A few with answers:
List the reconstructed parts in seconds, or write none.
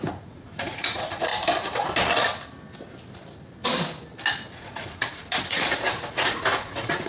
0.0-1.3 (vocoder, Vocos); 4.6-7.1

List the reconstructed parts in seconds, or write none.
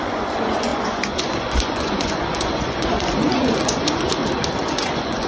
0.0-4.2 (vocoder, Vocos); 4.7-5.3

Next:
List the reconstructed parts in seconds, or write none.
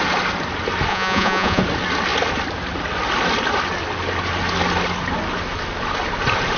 0.9-1.6 (vocoder, Vocos)